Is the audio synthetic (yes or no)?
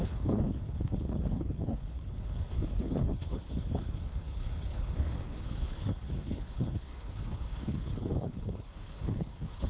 yes